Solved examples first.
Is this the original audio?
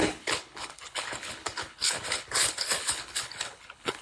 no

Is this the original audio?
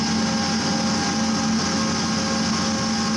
yes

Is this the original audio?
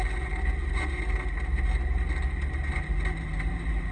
yes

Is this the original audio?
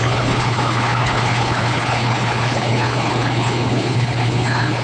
no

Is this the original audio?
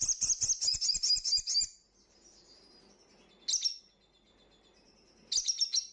yes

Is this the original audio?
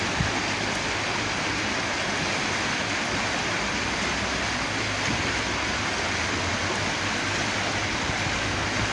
yes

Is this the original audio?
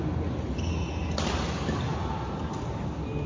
yes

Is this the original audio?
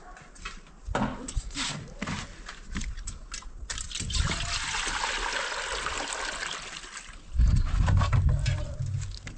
yes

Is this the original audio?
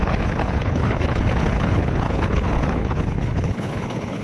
no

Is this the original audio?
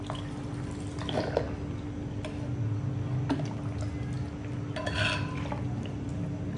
yes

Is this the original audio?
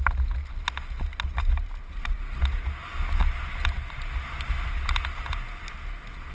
yes